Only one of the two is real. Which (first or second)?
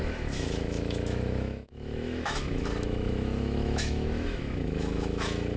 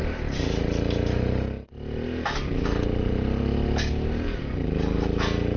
second